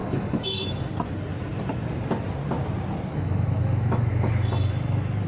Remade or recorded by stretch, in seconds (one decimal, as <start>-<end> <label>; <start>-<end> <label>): 0.0-0.8 remade; 0.8-3.1 recorded; 3.1-4.3 remade; 4.3-5.3 recorded